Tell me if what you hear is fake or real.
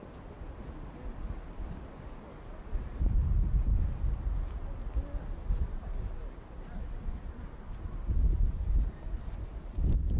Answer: real